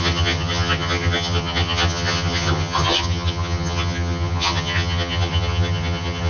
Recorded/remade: remade